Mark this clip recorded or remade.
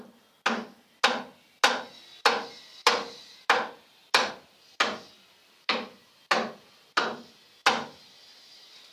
recorded